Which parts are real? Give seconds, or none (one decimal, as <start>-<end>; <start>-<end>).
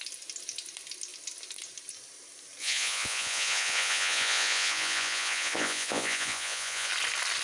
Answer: 0.0-2.6; 6.9-7.4